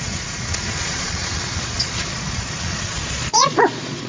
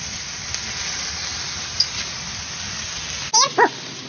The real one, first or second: second